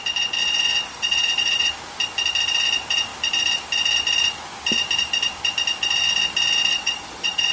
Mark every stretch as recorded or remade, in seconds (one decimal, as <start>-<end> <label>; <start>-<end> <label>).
0.0-0.4 recorded; 0.4-1.7 remade; 1.7-6.7 recorded; 6.7-7.5 remade